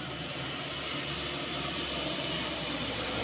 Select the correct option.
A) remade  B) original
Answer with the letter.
B